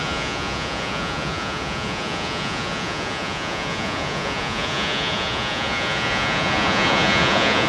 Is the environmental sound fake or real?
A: fake